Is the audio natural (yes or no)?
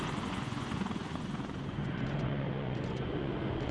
no